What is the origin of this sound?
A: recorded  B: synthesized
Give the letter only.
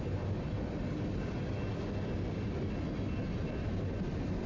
A